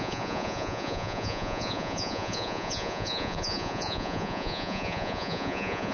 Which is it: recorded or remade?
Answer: remade